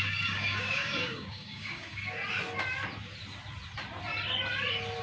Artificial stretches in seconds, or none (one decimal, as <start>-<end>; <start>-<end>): 0.0-2.0